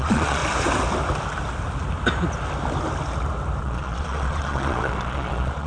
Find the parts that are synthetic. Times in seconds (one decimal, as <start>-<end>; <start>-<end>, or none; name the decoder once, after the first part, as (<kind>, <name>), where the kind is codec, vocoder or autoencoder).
0.0-0.4 (vocoder, Vocos); 3.6-5.7